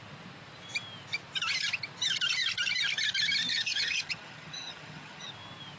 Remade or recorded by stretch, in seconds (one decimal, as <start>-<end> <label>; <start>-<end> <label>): 0.0-3.5 recorded; 3.5-5.3 remade; 5.3-5.8 recorded